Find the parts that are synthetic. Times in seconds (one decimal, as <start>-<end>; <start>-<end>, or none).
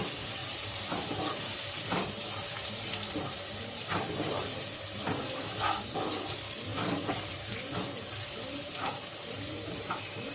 6.7-7.6